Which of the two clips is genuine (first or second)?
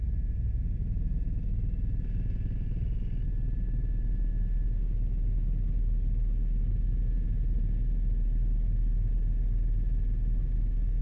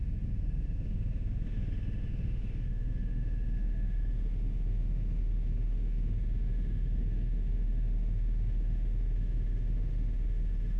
first